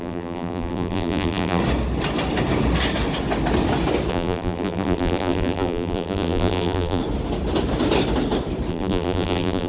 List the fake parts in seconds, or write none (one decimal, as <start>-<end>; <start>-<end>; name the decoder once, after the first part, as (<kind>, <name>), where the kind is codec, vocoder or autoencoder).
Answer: 0.0-1.6 (vocoder, BigVGAN v2); 4.1-7.0; 8.7-9.7